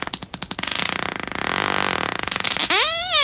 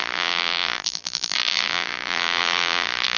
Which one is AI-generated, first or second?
second